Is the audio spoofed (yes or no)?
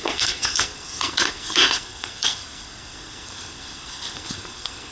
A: yes